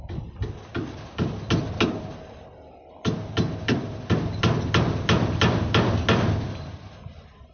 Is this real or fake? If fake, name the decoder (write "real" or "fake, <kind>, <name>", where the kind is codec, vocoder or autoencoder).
real